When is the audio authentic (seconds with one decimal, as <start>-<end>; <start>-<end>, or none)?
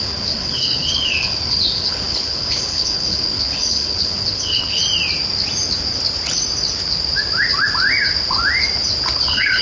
4.8-9.2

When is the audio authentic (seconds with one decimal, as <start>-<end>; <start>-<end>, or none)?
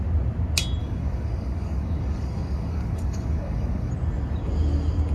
0.0-0.8; 3.9-5.1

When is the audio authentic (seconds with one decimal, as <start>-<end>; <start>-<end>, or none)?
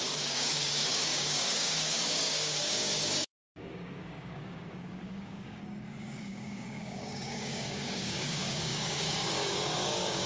none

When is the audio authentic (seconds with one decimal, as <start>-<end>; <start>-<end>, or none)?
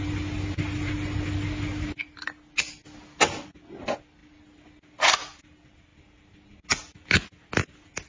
0.0-8.1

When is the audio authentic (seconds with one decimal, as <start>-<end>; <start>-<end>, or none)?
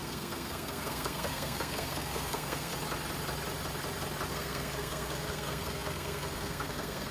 2.7-4.3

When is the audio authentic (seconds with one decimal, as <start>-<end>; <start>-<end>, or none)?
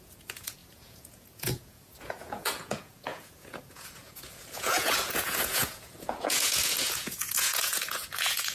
none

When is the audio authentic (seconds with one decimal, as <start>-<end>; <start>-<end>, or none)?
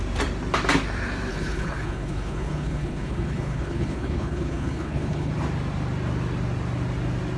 0.0-1.3; 5.3-7.4